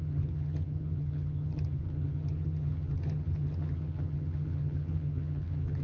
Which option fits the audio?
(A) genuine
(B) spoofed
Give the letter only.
B